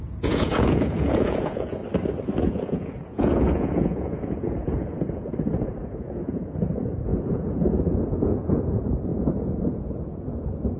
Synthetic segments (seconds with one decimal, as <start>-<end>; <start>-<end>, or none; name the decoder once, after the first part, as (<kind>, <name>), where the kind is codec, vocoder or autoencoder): 0.0-1.8 (vocoder, Vocos); 2.4-10.8